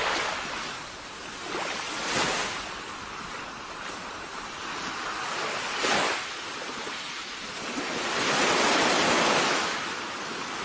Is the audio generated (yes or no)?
no